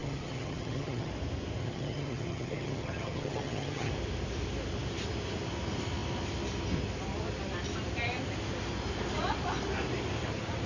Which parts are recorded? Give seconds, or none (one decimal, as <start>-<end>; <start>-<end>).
1.1-1.6; 3.9-10.7